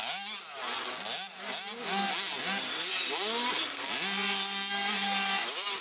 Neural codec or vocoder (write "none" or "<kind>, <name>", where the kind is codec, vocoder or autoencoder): none